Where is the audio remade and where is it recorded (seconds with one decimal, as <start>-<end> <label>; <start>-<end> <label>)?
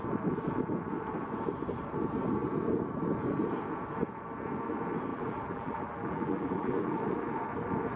0.0-5.1 recorded; 5.1-6.9 remade; 6.9-8.0 recorded